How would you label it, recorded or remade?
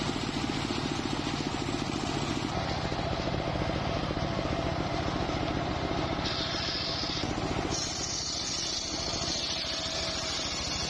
recorded